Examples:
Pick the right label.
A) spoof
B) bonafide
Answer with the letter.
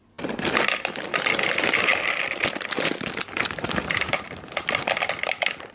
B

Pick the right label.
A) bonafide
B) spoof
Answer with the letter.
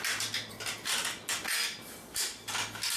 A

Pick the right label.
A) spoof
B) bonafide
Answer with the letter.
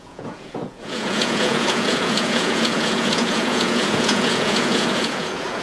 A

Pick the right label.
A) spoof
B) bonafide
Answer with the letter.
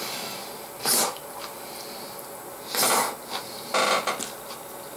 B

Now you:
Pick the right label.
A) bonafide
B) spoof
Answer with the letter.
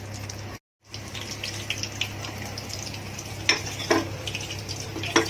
A